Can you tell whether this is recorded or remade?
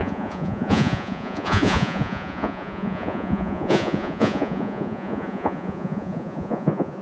remade